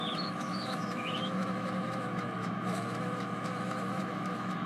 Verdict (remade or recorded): remade